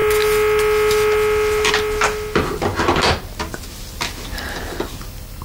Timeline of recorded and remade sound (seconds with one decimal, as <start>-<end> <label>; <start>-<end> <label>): 0.0-5.4 recorded